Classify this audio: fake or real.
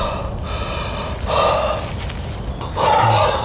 real